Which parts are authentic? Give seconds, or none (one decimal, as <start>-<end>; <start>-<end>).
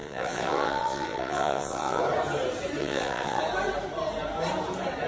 2.0-2.8; 3.4-5.1